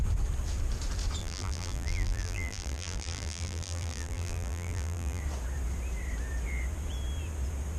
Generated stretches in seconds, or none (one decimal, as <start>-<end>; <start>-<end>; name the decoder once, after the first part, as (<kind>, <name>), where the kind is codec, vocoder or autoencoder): 1.2-5.2 (vocoder, BigVGAN v2)